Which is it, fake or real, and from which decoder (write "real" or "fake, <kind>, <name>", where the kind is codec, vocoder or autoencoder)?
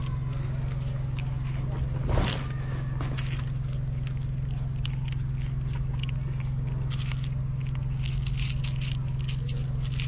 real